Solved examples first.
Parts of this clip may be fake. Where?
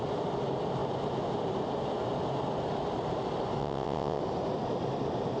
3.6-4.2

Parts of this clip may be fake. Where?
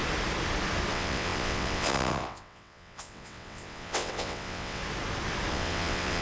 0.9-4.8; 5.5-6.2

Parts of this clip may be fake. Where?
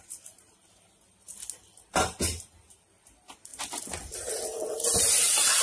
none